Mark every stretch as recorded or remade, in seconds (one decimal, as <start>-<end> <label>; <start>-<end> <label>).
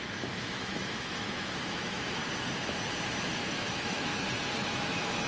0.0-2.2 remade; 2.2-3.3 recorded; 3.3-4.1 remade; 4.1-4.6 recorded; 4.6-5.3 remade